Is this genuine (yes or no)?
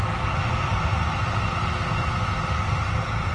yes